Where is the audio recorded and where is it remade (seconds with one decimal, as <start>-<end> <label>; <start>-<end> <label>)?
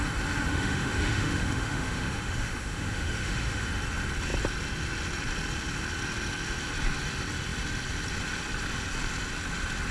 0.0-0.5 recorded; 0.5-3.7 remade; 3.7-9.9 recorded